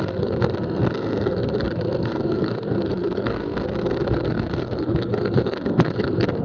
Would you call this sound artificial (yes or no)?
yes